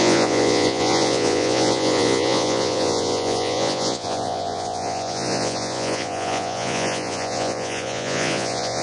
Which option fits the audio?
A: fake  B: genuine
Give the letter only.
A